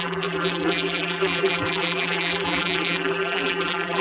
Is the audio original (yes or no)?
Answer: no